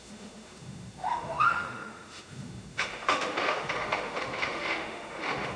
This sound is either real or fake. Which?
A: fake